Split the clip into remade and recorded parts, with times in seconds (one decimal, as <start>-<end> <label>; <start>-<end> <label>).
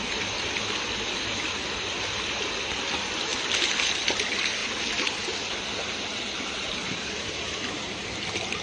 0.0-8.6 recorded